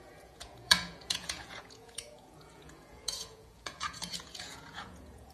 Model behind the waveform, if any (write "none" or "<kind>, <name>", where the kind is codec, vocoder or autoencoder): vocoder, Vocos